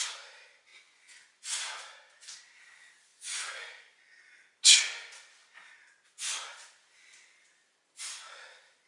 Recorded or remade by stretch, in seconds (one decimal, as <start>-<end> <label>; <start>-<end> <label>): 0.0-0.7 recorded; 0.7-1.6 remade; 1.6-3.1 recorded; 3.1-4.2 remade; 4.2-8.9 recorded